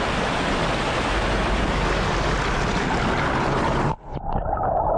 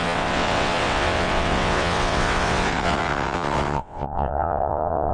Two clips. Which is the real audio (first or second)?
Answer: first